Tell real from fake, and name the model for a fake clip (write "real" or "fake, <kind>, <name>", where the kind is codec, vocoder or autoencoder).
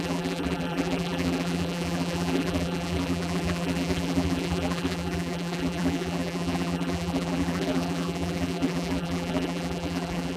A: fake, vocoder, BigVGAN v2